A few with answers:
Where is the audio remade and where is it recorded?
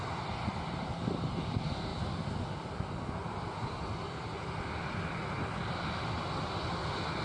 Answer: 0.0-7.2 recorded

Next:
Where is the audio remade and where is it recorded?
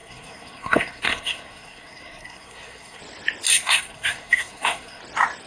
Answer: 0.0-3.0 remade; 3.0-3.5 recorded; 3.5-5.0 remade; 5.0-5.5 recorded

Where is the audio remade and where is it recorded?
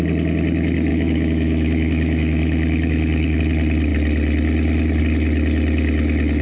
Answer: 0.0-0.9 recorded; 0.9-3.4 remade; 3.4-6.4 recorded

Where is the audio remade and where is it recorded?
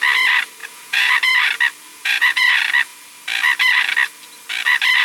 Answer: 0.0-0.6 recorded; 0.6-1.1 remade; 1.1-1.9 recorded; 1.9-2.5 remade; 2.5-5.0 recorded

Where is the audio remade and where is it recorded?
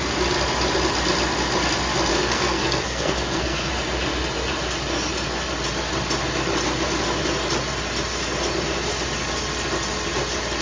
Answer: 0.0-2.1 recorded; 2.1-3.7 remade; 3.7-10.6 recorded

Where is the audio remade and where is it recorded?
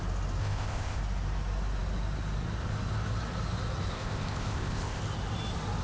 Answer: 0.0-0.4 recorded; 0.4-1.0 remade; 1.0-3.9 recorded; 3.9-5.0 remade; 5.0-5.8 recorded